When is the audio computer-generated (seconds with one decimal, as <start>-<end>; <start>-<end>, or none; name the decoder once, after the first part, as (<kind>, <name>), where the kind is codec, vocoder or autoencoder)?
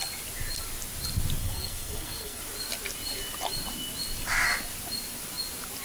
1.4-2.4 (codec, SNAC)